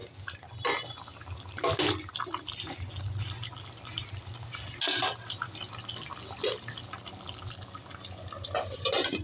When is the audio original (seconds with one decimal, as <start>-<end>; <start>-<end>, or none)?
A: 0.0-9.2